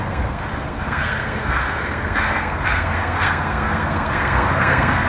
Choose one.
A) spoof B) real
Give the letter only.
A